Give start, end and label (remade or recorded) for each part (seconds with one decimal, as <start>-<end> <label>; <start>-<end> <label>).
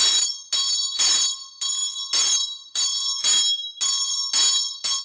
0.0-5.0 recorded